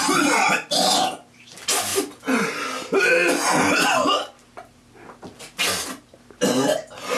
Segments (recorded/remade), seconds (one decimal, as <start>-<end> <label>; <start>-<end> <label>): 0.0-7.2 recorded